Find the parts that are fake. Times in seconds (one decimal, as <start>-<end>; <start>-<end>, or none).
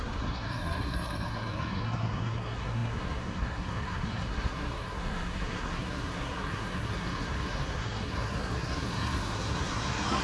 0.0-10.2